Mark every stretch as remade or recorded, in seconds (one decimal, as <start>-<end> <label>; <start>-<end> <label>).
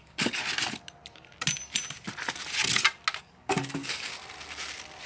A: 0.0-0.4 remade; 0.4-3.2 recorded; 3.2-4.1 remade; 4.1-5.1 recorded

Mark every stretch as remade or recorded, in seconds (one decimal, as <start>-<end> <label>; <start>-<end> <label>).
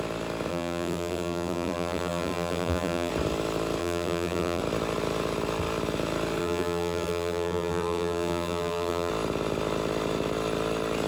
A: 0.0-0.5 recorded; 0.5-3.1 remade; 3.1-3.8 recorded; 3.8-4.6 remade; 4.6-6.4 recorded; 6.4-9.1 remade; 9.1-11.1 recorded